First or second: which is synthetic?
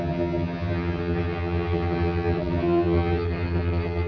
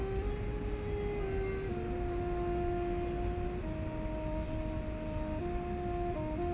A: first